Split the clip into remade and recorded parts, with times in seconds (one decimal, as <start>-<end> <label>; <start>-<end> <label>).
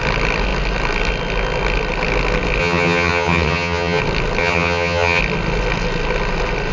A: 0.0-2.6 recorded; 2.6-4.0 remade; 4.0-4.4 recorded; 4.4-5.2 remade; 5.2-6.7 recorded